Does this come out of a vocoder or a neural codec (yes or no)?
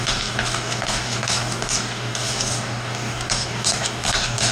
yes